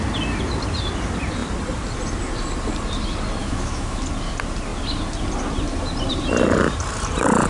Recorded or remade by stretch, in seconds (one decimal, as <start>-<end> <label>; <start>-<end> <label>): 0.0-3.4 recorded; 3.4-4.0 remade; 4.0-7.5 recorded